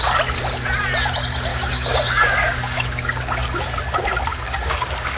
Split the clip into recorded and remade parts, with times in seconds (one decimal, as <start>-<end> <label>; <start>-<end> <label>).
0.0-1.5 recorded; 1.5-3.6 remade; 3.6-4.3 recorded; 4.3-5.2 remade